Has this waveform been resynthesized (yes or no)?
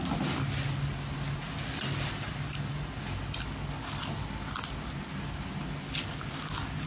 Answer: no